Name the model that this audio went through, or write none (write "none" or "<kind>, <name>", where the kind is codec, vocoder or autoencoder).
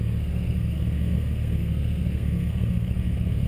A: codec, SNAC